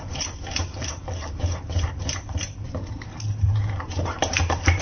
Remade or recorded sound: remade